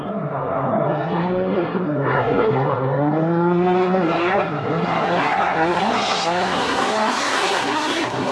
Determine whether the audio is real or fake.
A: fake